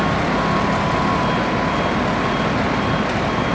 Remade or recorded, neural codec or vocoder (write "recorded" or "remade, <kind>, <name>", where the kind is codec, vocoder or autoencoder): recorded